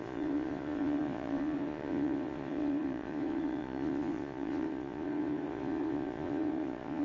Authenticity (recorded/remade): remade